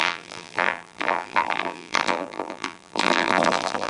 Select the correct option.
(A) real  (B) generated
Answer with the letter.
B